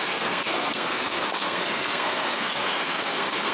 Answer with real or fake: fake